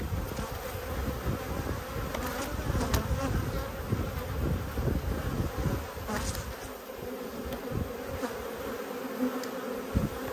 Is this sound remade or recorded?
recorded